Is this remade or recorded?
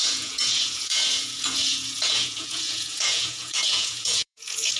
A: remade